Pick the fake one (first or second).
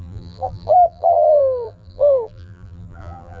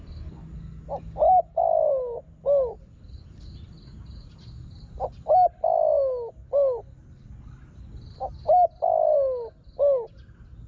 first